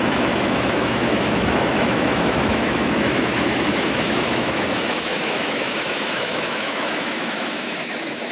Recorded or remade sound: remade